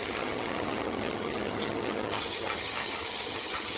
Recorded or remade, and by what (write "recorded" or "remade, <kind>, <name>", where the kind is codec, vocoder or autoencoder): remade, vocoder, HiFi-GAN